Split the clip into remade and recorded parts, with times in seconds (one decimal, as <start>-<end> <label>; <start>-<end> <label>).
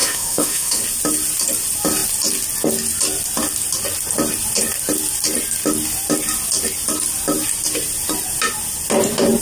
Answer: 0.0-0.8 remade; 0.8-9.4 recorded